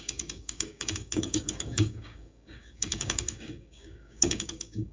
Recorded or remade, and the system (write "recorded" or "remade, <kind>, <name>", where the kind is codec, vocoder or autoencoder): remade, codec, DAC